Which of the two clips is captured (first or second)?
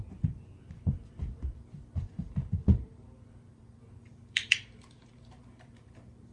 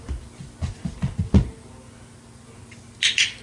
second